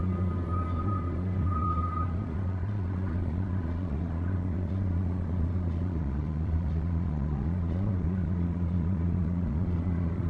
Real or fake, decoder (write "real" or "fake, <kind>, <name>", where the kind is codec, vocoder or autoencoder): fake, vocoder, Vocos